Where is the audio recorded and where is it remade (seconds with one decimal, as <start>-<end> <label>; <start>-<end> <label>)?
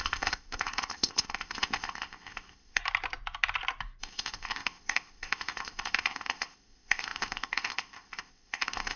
0.0-2.8 remade; 2.8-4.0 recorded; 4.0-9.0 remade